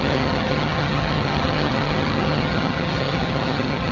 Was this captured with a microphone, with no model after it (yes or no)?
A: no